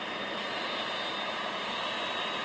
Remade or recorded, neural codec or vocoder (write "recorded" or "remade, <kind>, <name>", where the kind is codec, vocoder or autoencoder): recorded